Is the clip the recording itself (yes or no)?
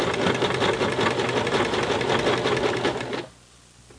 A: yes